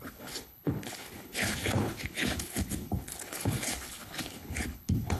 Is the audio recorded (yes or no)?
no